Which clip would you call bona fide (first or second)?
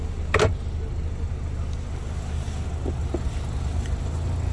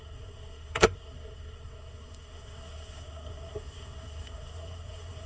first